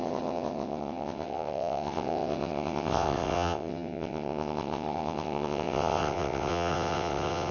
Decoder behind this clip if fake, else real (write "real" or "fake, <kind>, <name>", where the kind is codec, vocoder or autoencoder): fake, vocoder, WaveNeXt